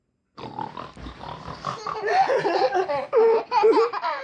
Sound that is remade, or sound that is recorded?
recorded